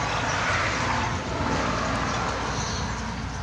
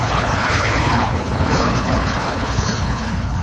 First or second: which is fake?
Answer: second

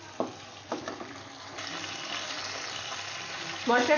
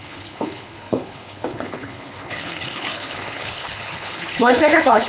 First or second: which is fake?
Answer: second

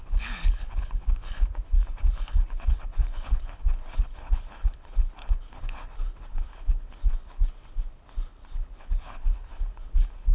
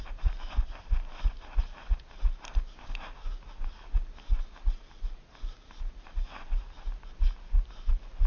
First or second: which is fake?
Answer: first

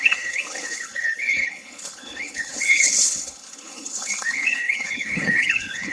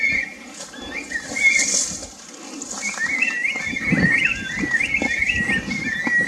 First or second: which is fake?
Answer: first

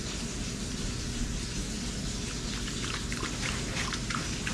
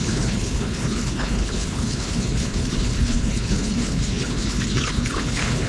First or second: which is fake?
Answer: second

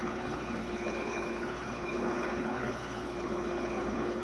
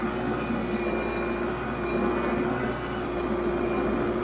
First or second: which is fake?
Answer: first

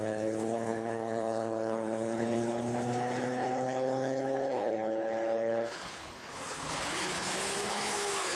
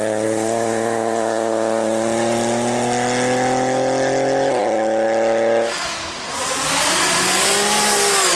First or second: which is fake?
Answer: first